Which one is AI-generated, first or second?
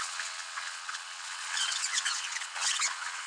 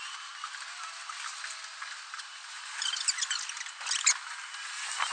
first